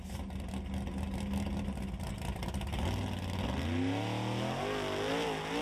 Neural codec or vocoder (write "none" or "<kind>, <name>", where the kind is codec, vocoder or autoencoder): none